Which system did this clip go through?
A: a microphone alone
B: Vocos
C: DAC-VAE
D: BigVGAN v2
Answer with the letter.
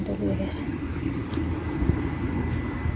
A